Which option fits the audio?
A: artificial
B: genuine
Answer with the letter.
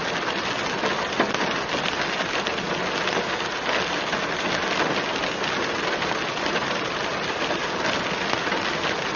B